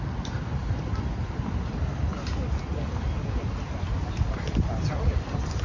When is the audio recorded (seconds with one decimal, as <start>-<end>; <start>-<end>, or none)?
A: 0.0-5.6